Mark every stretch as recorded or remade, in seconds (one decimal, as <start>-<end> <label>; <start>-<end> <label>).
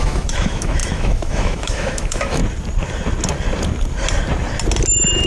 0.0-2.4 remade; 2.4-5.3 recorded